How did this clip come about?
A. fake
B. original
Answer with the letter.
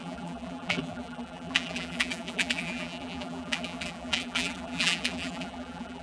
A